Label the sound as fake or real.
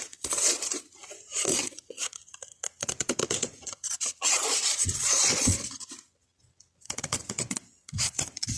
fake